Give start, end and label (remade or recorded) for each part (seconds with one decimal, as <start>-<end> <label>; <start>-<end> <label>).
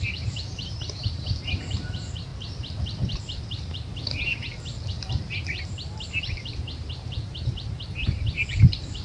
0.0-2.3 remade; 2.3-3.2 recorded; 3.2-4.3 remade; 4.3-4.9 recorded; 4.9-9.0 remade